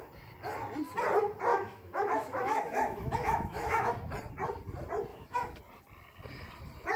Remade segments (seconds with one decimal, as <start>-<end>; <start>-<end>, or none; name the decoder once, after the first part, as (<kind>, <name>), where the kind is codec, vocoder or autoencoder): 1.5-3.9 (autoencoder, DAC-VAE); 5.1-5.6